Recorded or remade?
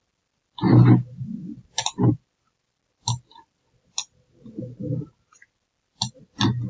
recorded